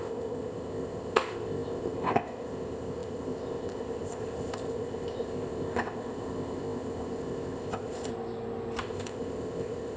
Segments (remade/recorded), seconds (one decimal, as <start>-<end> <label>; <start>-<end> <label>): 0.0-8.1 remade; 8.1-8.8 recorded; 8.8-10.0 remade